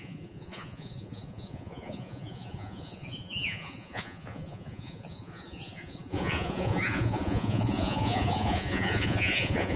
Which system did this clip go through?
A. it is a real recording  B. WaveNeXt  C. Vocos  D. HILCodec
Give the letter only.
C